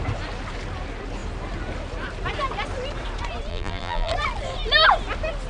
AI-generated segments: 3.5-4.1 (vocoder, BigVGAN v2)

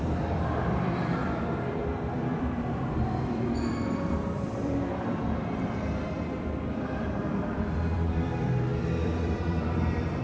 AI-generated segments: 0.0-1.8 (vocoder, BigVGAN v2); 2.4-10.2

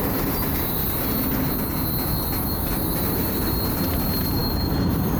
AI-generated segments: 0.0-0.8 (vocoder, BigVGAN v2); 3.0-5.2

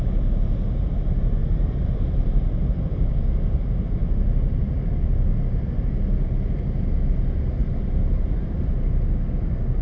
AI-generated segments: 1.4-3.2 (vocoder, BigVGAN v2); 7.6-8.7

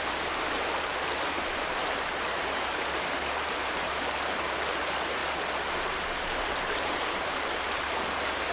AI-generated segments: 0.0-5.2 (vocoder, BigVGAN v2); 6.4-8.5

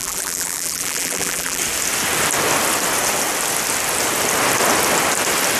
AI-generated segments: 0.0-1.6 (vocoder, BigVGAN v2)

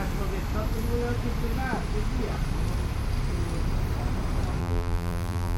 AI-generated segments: 4.6-5.6 (vocoder, BigVGAN v2)